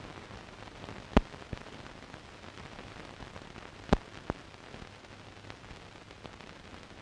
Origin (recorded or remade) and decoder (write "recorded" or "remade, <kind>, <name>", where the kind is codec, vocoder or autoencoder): recorded